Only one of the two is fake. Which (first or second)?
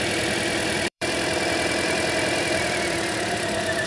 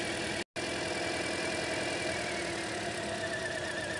first